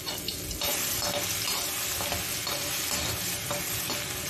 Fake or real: real